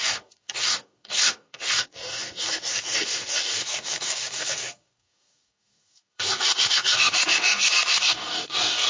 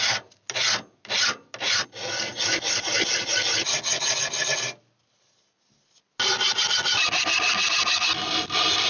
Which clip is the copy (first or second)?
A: first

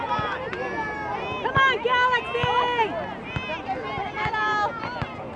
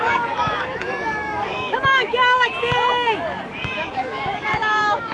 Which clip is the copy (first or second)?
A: second